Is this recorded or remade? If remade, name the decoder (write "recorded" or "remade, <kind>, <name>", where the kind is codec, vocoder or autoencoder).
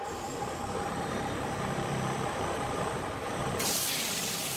remade, vocoder, BigVGAN v2